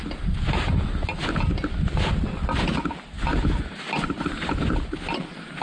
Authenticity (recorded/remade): recorded